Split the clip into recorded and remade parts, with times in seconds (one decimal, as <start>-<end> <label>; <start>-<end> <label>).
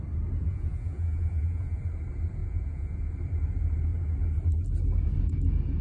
0.0-0.4 recorded; 0.4-1.8 remade; 1.8-2.4 recorded; 2.4-3.1 remade; 3.1-5.8 recorded